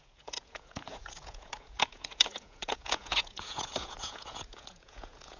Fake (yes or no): yes